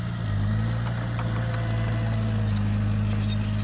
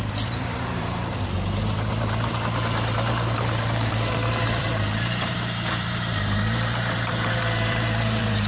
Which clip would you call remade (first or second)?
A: second